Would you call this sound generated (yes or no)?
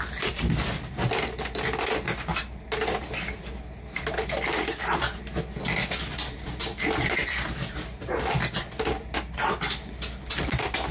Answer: no